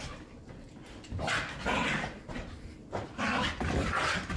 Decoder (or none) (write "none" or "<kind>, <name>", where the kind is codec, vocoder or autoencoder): none